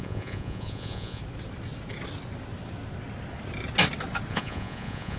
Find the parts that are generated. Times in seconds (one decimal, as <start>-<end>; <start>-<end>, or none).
0.0-1.2; 4.3-5.2